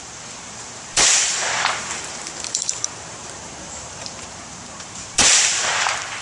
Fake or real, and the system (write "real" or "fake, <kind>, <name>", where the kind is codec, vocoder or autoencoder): fake, vocoder, BigVGAN v2